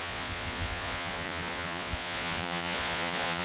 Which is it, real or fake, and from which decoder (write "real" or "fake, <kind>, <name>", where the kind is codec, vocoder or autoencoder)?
fake, vocoder, Vocos